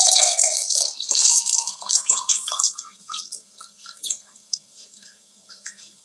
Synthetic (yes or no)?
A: yes